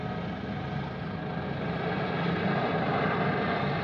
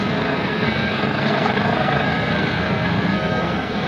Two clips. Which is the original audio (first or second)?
first